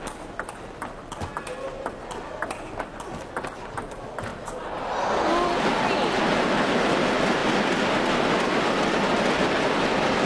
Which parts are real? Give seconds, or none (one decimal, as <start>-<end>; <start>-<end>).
0.0-10.3